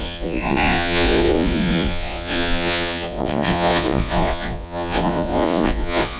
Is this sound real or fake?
fake